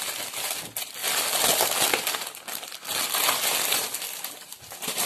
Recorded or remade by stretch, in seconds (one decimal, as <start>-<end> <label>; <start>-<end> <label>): 0.0-5.1 recorded